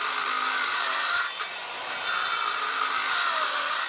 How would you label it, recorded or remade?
recorded